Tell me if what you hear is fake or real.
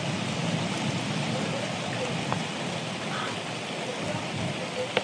real